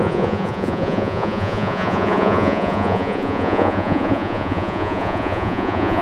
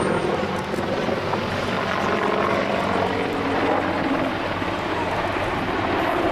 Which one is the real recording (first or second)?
second